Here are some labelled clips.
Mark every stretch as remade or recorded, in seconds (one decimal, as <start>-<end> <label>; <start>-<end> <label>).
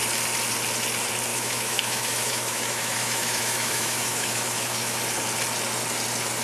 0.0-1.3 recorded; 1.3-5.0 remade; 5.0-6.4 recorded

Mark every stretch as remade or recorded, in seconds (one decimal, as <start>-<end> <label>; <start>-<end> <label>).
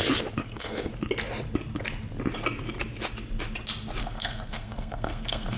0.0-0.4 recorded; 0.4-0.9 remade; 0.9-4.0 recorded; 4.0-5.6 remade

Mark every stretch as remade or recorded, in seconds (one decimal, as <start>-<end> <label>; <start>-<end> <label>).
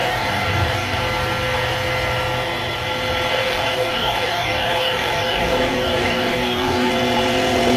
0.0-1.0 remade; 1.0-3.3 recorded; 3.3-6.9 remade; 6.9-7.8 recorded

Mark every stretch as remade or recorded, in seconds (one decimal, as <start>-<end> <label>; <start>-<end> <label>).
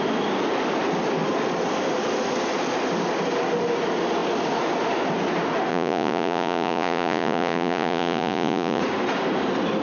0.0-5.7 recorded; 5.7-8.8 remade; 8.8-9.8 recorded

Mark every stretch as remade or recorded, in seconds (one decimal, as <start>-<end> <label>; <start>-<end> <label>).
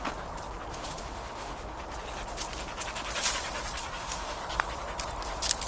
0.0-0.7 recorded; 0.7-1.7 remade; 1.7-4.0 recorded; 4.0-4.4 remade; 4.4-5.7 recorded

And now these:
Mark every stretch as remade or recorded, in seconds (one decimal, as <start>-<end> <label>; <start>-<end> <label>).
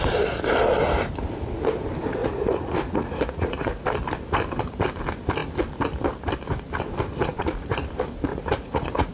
0.0-2.2 recorded; 2.2-3.8 remade; 3.8-7.2 recorded; 7.2-7.9 remade; 7.9-8.3 recorded; 8.3-9.1 remade